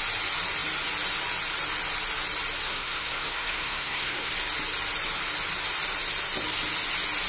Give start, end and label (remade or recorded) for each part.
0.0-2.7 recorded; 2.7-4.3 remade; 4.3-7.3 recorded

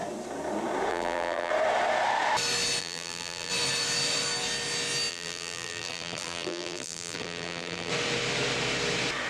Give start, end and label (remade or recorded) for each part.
0.0-0.9 recorded; 0.9-1.5 remade; 1.5-2.8 recorded; 2.8-3.5 remade; 3.5-5.1 recorded; 5.1-7.9 remade; 7.9-9.3 recorded

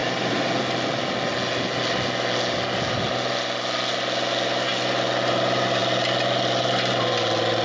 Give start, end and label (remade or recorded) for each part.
0.0-7.6 recorded